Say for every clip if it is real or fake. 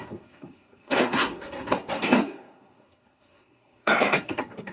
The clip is fake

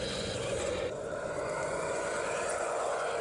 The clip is fake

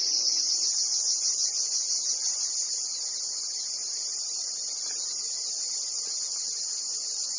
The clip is real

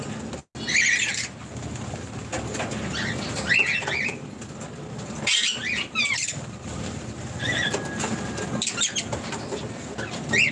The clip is real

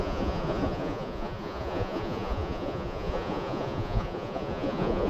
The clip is fake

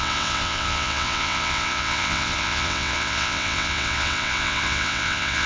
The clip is fake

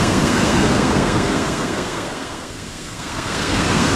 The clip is fake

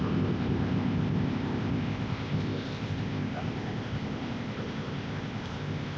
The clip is fake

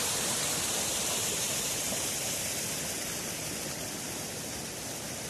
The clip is fake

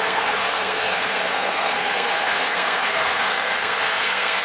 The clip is fake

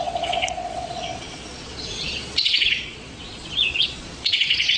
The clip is fake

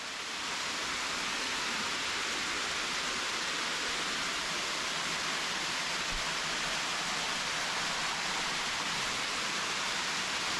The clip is real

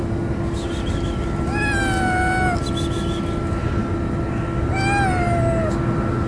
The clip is real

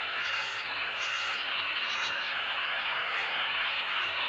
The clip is fake